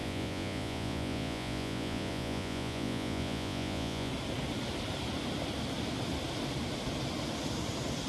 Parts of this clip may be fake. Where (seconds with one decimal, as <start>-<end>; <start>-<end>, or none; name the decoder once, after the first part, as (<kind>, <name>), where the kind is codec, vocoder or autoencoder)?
0.0-4.1 (vocoder, Vocos)